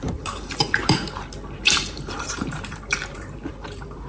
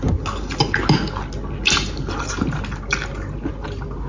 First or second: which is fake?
first